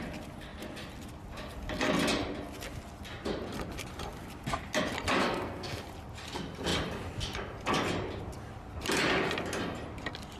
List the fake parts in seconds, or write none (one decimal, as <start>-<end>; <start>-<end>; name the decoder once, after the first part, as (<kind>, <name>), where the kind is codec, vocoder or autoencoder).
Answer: 5.2-5.8 (codec, SNAC)